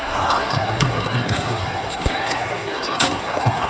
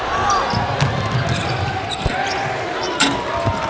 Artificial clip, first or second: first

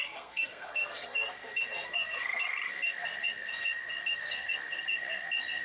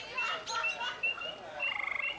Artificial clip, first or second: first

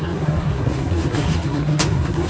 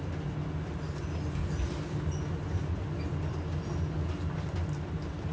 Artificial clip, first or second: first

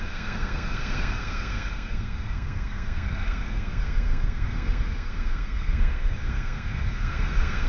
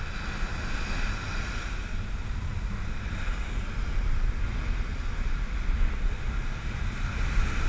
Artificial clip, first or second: first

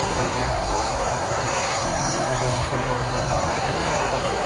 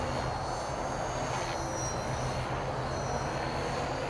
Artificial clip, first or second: first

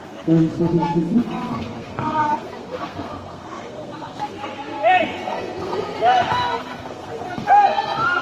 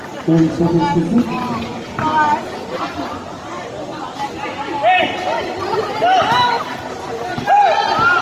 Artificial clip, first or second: first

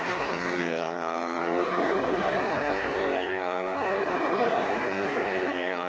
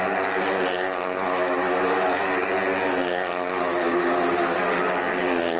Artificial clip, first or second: first